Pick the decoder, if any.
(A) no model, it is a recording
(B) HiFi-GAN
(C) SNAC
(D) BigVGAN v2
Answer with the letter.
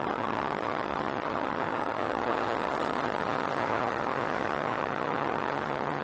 B